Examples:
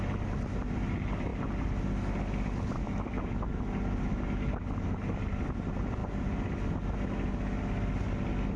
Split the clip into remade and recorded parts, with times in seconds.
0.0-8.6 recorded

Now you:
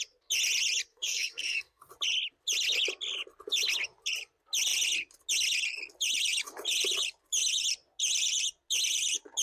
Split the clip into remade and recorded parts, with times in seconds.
0.0-0.9 recorded; 0.9-1.8 remade; 1.8-9.4 recorded

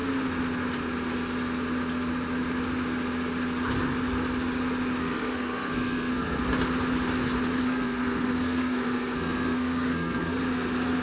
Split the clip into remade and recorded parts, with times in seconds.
0.0-5.0 recorded; 5.0-6.4 remade; 6.4-7.6 recorded; 7.6-10.4 remade; 10.4-11.0 recorded

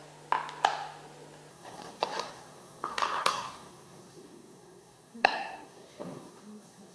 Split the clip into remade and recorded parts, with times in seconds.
0.0-1.5 recorded; 1.5-6.9 remade

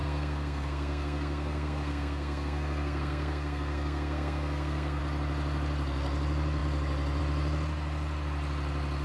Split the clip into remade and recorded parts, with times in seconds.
0.0-5.0 remade; 5.0-9.0 recorded

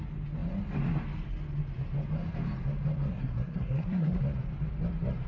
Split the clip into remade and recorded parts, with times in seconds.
0.0-3.1 recorded; 3.1-4.2 remade; 4.2-5.3 recorded